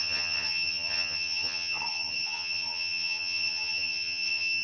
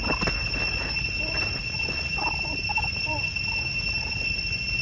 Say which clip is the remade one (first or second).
first